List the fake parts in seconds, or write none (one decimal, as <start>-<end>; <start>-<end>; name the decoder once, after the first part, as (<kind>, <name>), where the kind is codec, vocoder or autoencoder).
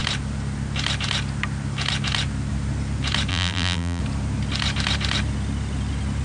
3.3-4.0 (vocoder, BigVGAN v2)